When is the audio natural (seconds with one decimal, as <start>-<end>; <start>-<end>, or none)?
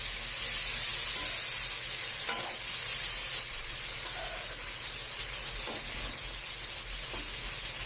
0.0-7.9